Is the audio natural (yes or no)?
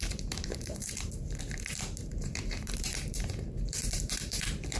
no